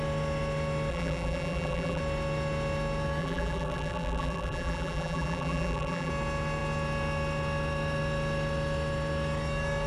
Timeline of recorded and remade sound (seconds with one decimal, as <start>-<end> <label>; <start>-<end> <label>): 0.0-0.9 recorded; 0.9-2.0 remade; 2.0-3.2 recorded; 3.2-6.1 remade; 6.1-9.9 recorded